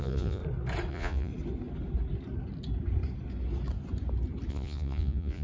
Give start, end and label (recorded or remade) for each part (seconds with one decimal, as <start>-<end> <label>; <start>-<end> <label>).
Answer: 0.0-0.4 remade; 0.4-0.9 recorded; 0.9-1.3 remade; 1.3-4.5 recorded; 4.5-5.4 remade